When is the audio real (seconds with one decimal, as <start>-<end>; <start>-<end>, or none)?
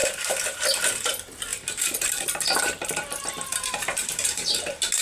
0.6-1.5; 4.5-5.0